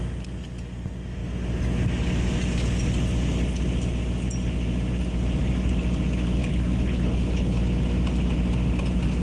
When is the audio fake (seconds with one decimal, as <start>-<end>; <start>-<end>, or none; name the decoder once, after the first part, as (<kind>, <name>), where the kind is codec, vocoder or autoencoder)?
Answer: 6.4-7.6 (codec, HILCodec)